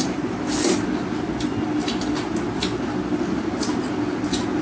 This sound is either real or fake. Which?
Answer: real